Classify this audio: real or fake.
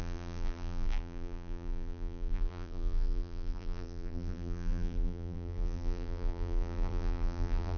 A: fake